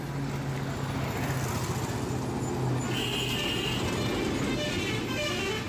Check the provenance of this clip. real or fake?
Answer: real